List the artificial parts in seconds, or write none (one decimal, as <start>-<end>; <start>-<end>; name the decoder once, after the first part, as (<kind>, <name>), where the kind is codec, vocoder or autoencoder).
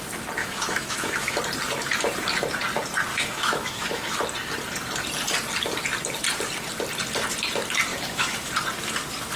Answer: 0.4-1.4 (autoencoder, DAC-VAE); 3.1-4.2; 7.9-8.5